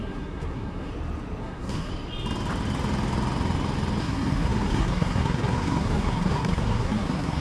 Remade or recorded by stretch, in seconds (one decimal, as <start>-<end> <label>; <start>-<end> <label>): 0.0-0.9 remade; 0.9-1.4 recorded; 1.4-1.9 remade; 1.9-4.0 recorded; 4.0-7.4 remade